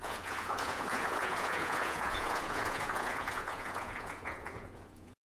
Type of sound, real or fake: fake